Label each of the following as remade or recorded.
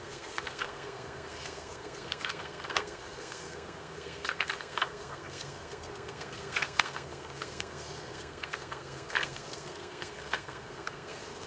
remade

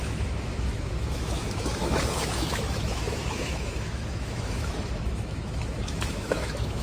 remade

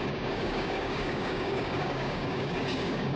remade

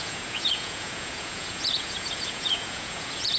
remade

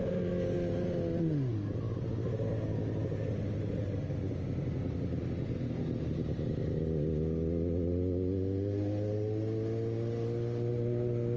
recorded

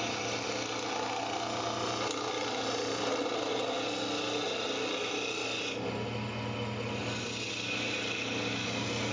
recorded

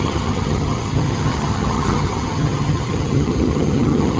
remade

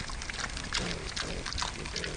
recorded